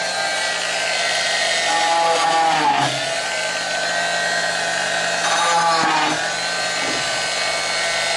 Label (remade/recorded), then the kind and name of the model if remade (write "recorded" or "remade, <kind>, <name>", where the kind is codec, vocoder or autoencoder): recorded